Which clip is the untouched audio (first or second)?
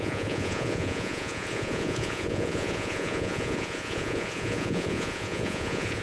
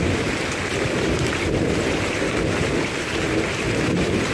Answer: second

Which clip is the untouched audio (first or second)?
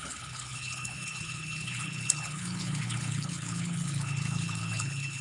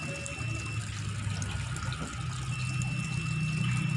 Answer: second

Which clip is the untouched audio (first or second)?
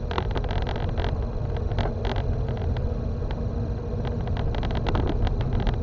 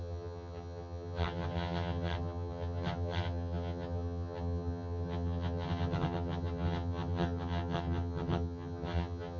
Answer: first